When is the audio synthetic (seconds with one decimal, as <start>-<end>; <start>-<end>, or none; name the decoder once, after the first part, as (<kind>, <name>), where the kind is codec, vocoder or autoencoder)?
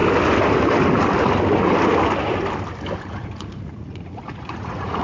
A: 3.0-5.0 (vocoder, Vocos)